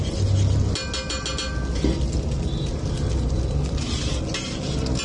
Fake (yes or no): no